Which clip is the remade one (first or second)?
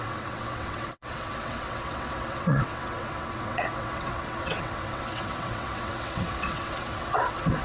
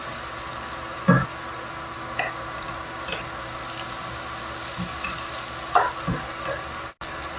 first